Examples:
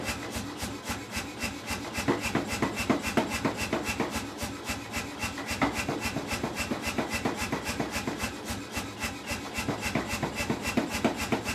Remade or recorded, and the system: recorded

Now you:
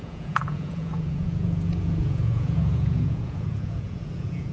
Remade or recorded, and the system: remade, vocoder, Vocos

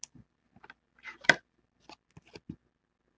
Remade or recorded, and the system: recorded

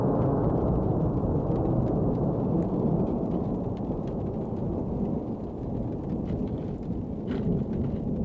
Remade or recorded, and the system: recorded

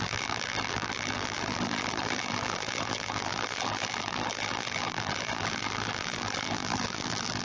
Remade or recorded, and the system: remade, vocoder, BigVGAN v2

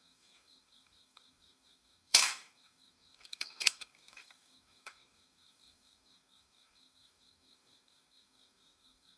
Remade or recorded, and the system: remade, codec, DAC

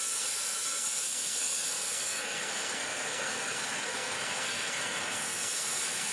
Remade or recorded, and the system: remade, codec, SNAC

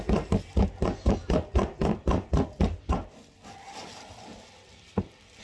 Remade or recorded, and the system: recorded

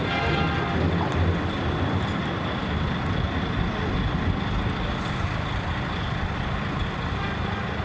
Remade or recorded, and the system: recorded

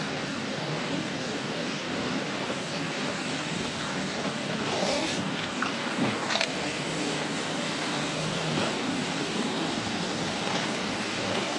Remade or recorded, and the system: remade, codec, DAC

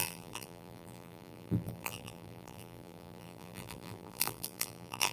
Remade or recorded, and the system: remade, vocoder, BigVGAN v2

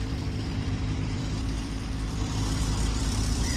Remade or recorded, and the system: remade, vocoder, BigVGAN v2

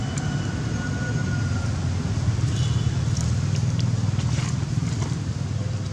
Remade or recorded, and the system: recorded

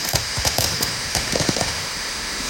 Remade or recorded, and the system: remade, autoencoder, DAC-VAE